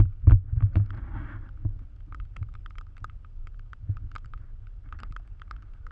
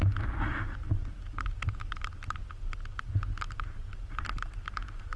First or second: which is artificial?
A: first